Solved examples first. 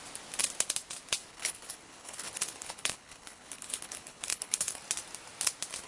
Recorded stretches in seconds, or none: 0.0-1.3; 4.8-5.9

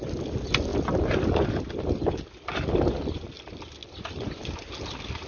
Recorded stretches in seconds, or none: 0.0-5.3

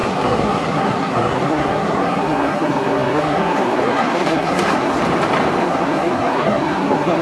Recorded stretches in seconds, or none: 5.0-5.6

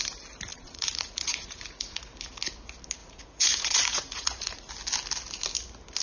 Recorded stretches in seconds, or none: 0.0-0.5; 2.0-3.0; 4.7-6.0

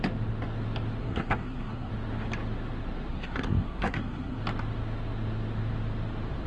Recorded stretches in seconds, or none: 0.0-1.0; 1.9-3.1; 4.4-6.5

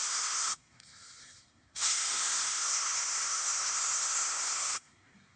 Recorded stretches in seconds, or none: none

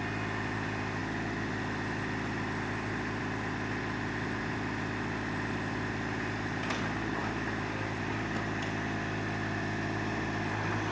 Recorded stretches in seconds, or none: 0.0-10.9